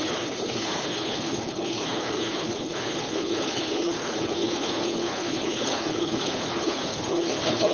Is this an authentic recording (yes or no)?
no